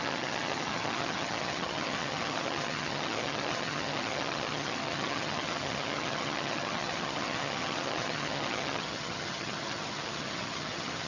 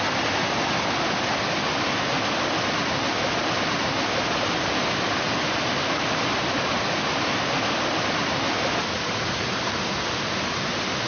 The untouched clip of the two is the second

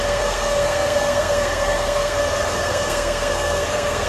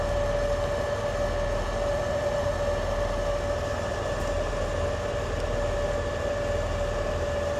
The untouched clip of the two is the second